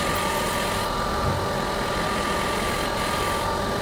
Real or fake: real